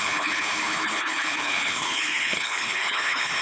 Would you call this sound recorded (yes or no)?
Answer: no